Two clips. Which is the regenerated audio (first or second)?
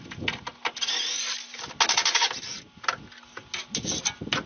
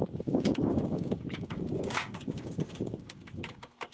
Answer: second